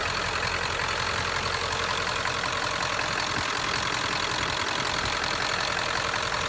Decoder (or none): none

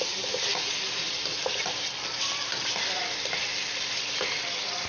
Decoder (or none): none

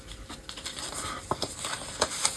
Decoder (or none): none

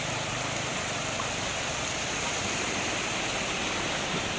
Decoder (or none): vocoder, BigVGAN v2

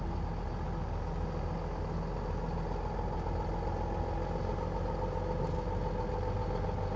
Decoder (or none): none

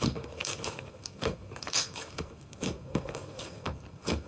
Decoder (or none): codec, SNAC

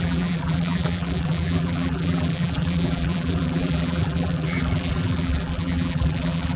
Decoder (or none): vocoder, BigVGAN v2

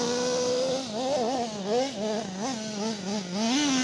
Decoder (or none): none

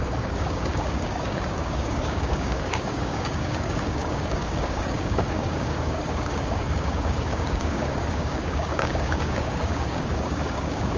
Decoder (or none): codec, DAC